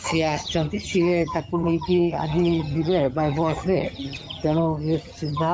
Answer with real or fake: fake